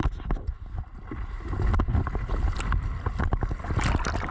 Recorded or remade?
recorded